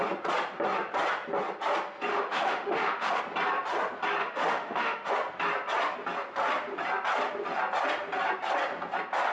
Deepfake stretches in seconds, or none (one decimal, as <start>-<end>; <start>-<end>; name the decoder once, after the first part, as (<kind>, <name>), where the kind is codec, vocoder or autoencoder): 2.1-3.2 (autoencoder, DAC-VAE); 4.2-5.1

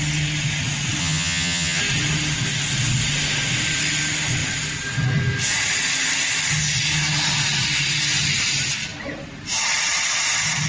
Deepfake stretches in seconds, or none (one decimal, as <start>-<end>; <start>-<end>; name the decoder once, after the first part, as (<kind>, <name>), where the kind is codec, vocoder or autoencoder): 1.0-1.8 (vocoder, HiFi-GAN)

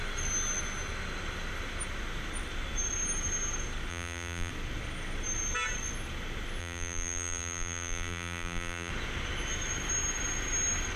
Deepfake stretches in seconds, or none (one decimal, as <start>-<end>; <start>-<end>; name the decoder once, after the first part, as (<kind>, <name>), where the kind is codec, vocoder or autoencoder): 3.9-4.5 (vocoder, BigVGAN v2); 6.6-8.9

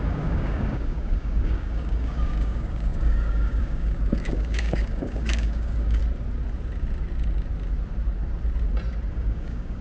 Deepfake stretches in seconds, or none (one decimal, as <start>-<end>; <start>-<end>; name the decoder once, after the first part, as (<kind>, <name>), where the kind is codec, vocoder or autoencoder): 0.0-6.0 (codec, DAC); 9.1-9.8

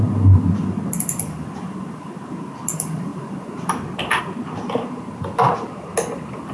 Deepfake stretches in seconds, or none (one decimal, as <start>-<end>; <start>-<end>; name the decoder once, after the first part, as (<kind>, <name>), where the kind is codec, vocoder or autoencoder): none